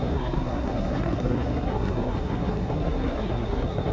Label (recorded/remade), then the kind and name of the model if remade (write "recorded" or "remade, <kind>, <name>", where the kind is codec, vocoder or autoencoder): remade, codec, SNAC